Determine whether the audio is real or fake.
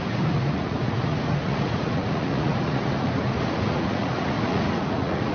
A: fake